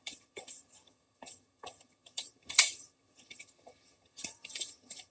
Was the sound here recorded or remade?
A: remade